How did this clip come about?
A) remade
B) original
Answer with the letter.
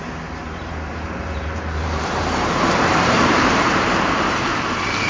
A